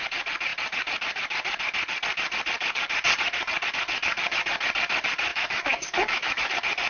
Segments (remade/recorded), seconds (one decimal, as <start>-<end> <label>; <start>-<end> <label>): 0.0-5.3 recorded; 5.3-6.5 remade; 6.5-6.9 recorded